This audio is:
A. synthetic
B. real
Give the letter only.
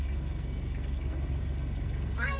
A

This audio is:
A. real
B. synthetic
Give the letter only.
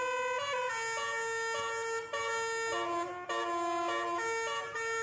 A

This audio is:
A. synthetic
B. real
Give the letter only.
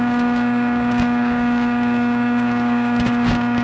A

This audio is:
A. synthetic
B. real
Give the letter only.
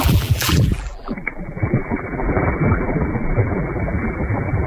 A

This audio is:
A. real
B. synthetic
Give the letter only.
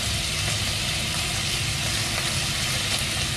A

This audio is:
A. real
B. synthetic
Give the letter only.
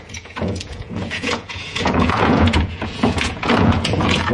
B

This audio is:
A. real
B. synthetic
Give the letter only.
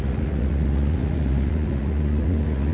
B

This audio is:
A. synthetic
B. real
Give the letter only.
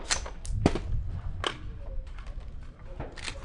B